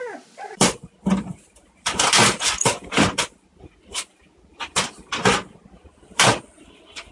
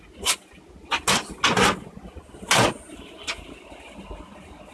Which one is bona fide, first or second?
second